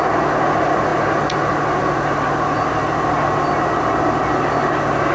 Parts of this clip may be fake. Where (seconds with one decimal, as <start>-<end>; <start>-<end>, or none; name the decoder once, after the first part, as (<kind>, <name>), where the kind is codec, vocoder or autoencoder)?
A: none